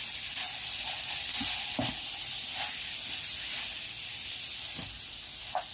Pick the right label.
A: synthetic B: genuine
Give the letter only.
B